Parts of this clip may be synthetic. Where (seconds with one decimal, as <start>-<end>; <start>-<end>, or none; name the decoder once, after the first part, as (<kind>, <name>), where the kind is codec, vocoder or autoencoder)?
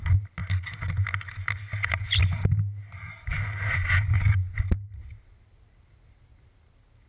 none